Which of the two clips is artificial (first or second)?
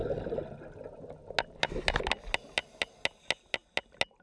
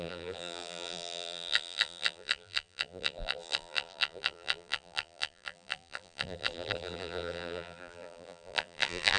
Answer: second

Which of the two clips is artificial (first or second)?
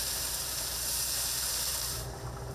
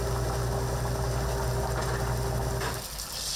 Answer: first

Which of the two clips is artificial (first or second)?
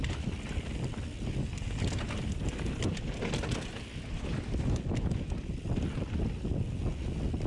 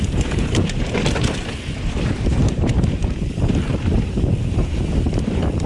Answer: second